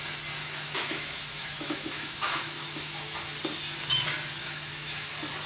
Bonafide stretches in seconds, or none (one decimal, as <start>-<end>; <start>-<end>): 0.0-0.4; 3.2-4.4; 5.1-5.5